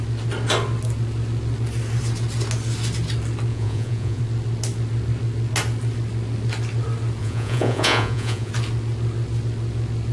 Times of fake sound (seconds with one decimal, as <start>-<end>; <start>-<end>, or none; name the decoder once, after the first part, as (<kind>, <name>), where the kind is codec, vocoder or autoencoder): 3.5-4.2 (vocoder, Vocos); 7.2-8.5